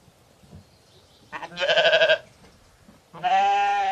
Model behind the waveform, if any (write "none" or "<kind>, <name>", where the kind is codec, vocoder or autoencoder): none